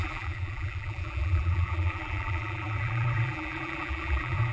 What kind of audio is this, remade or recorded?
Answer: remade